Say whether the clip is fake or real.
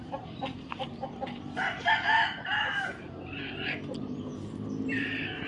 fake